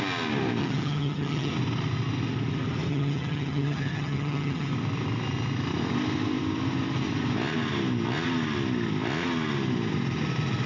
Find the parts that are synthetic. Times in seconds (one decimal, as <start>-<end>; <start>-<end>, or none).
0.6-1.5; 2.9-4.7